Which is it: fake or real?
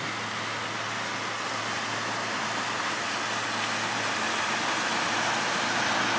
real